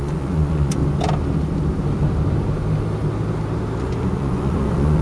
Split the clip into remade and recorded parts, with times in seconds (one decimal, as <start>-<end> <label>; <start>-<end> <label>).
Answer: 0.0-0.8 remade; 0.8-3.8 recorded; 3.8-5.0 remade

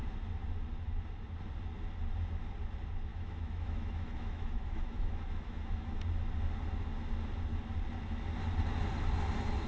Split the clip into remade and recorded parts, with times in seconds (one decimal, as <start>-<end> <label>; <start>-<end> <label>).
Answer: 0.0-3.1 recorded; 3.1-6.0 remade; 6.0-9.7 recorded

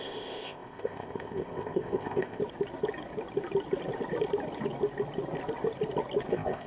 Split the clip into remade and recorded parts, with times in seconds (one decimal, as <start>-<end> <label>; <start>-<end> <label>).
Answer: 0.0-2.4 remade; 2.4-6.3 recorded; 6.3-6.7 remade

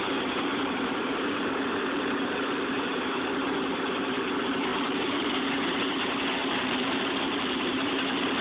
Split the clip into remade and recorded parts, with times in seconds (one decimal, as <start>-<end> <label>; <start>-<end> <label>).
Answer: 0.0-4.7 recorded; 4.7-5.4 remade; 5.4-6.4 recorded; 6.4-8.4 remade

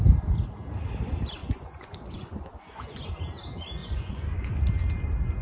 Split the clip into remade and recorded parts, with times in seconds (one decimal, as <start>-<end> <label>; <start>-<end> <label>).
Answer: 0.0-1.4 recorded; 1.4-3.1 remade; 3.1-3.8 recorded; 3.8-4.6 remade; 4.6-5.4 recorded

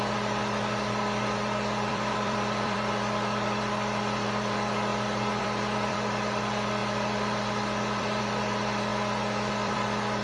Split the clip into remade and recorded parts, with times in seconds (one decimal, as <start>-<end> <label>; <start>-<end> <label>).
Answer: 0.0-4.9 remade; 4.9-5.4 recorded; 5.4-8.9 remade; 8.9-9.5 recorded; 9.5-10.2 remade

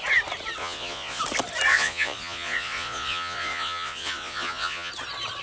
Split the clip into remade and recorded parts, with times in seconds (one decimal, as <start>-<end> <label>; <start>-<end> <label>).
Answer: 0.0-0.6 recorded; 0.6-1.2 remade; 1.2-1.7 recorded; 1.7-4.9 remade; 4.9-5.4 recorded

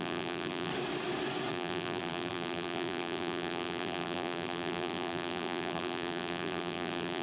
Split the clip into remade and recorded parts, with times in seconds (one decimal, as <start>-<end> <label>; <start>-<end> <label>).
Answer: 0.0-0.7 remade; 0.7-1.5 recorded; 1.5-7.2 remade